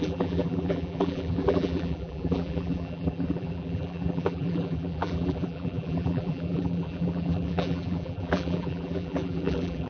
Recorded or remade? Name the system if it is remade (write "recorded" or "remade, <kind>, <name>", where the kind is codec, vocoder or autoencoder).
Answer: remade, vocoder, BigVGAN v2